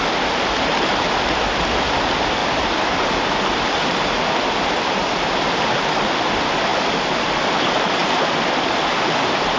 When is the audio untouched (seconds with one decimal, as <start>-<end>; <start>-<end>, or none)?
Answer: 0.0-9.6